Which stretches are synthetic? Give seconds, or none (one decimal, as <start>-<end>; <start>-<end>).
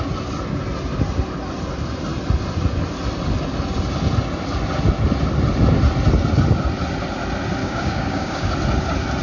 7.6-8.5